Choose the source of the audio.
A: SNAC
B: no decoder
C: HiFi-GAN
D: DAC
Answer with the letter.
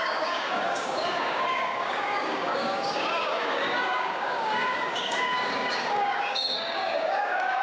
D